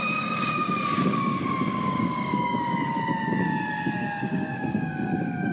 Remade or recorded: remade